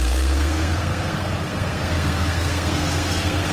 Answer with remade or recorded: remade